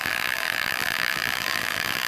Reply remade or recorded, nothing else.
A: remade